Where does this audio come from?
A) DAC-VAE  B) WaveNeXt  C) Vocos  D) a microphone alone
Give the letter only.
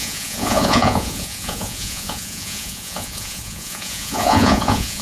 C